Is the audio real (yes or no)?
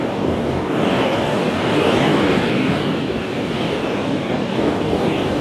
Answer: no